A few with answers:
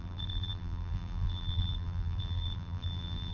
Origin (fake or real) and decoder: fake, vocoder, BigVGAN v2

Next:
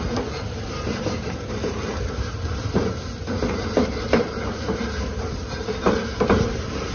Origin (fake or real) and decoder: fake, vocoder, BigVGAN v2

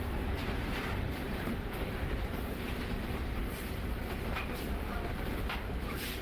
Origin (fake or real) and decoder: fake, vocoder, BigVGAN v2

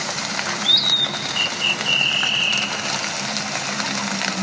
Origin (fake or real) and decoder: real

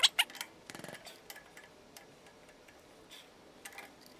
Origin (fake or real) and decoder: real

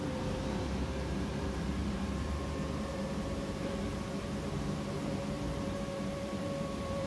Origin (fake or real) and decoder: fake, vocoder, BigVGAN v2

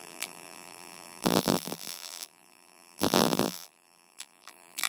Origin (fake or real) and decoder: fake, vocoder, BigVGAN v2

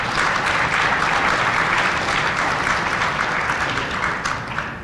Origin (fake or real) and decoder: fake, vocoder, BigVGAN v2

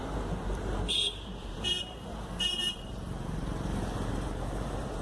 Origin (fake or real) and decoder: fake, vocoder, BigVGAN v2